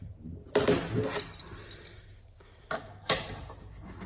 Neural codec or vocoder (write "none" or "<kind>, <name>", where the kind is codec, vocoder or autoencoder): none